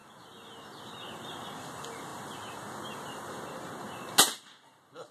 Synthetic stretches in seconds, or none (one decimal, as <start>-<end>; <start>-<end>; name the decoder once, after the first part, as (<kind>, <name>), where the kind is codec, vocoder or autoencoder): none